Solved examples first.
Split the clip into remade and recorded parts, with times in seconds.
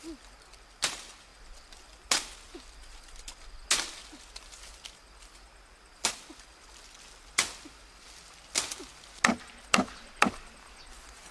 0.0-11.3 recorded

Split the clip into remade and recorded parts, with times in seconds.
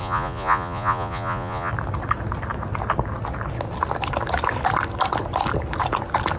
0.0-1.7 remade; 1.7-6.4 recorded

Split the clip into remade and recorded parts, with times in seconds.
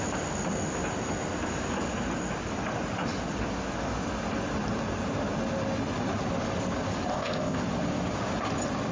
0.0-7.1 recorded; 7.1-7.6 remade; 7.6-8.9 recorded